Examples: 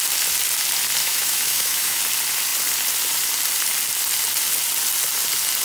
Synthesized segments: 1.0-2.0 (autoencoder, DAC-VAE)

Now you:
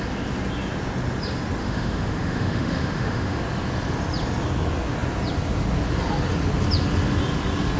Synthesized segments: 1.6-3.4 (autoencoder, DAC-VAE)

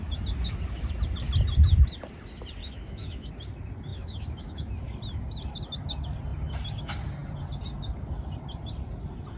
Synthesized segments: 2.6-3.3 (autoencoder, DAC-VAE); 3.9-4.7